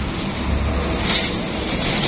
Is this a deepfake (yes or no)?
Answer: no